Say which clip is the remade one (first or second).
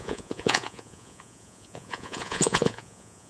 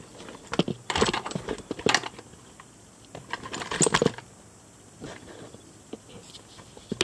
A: first